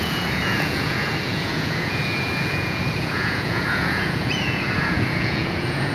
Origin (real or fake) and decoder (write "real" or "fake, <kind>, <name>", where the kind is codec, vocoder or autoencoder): fake, vocoder, Vocos